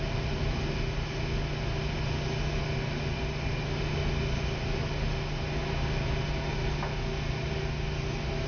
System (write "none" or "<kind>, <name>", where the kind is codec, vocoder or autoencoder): none